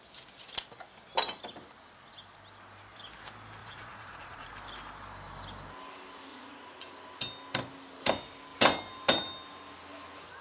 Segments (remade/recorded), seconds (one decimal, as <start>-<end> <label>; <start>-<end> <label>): 0.0-3.6 recorded; 3.6-4.5 remade; 4.5-6.3 recorded; 6.3-6.9 remade; 6.9-10.4 recorded